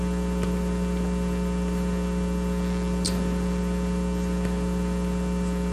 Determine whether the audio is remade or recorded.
recorded